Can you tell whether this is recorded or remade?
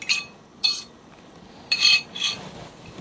remade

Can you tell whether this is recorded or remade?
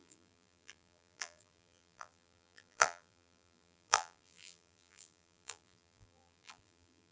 remade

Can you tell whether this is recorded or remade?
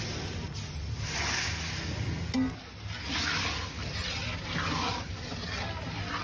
recorded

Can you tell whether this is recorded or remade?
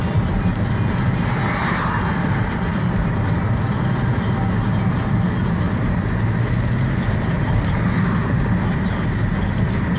recorded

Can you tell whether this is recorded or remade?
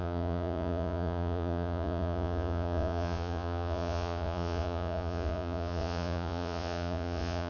remade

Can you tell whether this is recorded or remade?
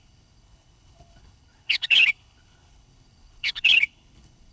remade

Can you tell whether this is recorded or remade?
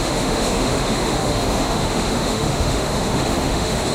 remade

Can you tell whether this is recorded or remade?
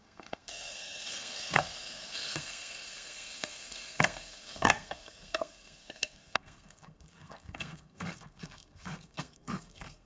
remade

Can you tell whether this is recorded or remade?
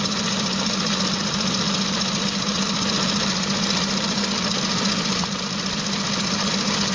recorded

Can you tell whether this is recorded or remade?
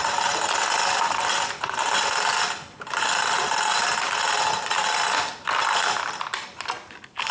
recorded